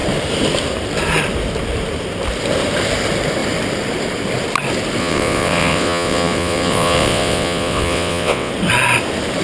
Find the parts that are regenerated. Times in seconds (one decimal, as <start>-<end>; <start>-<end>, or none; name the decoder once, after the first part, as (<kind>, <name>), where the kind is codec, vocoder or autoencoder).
5.0-8.5 (vocoder, WaveNeXt)